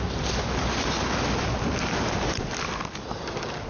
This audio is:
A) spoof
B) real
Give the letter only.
B